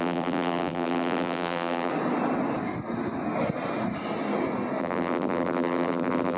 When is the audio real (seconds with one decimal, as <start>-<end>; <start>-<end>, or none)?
1.9-4.8